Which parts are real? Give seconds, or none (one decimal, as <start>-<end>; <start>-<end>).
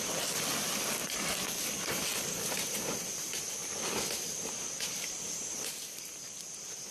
0.0-6.9